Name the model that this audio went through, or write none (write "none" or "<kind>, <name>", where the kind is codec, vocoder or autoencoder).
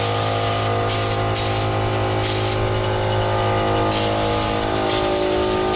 none